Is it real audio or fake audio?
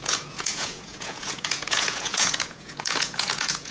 fake